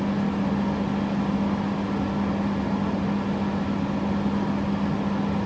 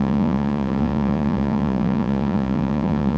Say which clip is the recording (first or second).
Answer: first